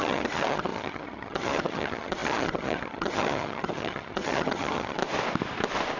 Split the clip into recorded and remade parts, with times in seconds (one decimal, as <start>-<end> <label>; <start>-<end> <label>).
0.0-5.0 remade; 5.0-6.0 recorded